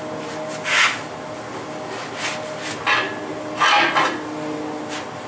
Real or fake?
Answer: real